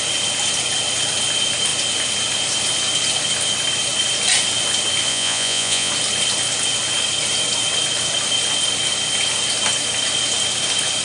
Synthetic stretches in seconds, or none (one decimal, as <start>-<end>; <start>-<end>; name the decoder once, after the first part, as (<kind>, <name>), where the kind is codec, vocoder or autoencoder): 5.1-5.9 (vocoder, Vocos)